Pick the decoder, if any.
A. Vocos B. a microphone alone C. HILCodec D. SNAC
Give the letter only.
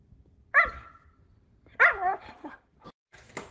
B